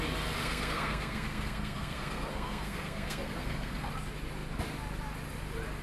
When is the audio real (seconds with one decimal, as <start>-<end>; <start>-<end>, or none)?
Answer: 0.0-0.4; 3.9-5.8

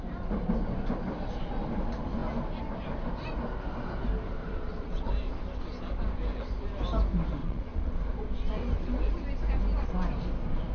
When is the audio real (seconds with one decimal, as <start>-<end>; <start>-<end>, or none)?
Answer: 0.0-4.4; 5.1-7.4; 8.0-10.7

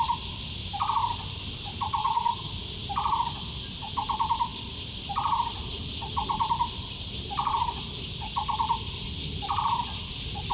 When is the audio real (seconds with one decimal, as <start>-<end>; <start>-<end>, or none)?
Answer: 0.0-2.0; 2.5-10.5

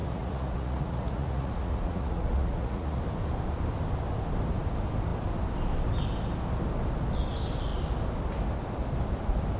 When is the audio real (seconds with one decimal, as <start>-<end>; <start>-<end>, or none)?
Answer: 3.0-9.6

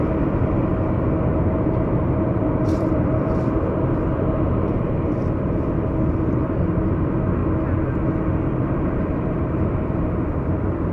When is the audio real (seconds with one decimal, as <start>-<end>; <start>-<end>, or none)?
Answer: 0.7-2.0; 7.4-8.5

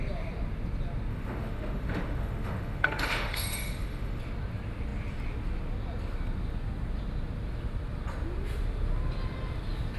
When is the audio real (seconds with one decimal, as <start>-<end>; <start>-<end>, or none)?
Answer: 0.0-1.1; 4.2-10.0

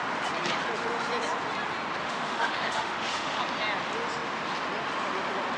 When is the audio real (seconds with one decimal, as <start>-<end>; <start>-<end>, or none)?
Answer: 0.0-2.0; 3.4-5.6